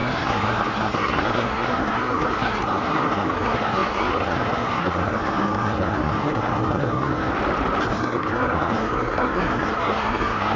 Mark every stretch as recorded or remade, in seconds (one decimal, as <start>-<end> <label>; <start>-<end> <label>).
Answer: 0.0-7.3 remade; 7.3-7.9 recorded; 7.9-10.6 remade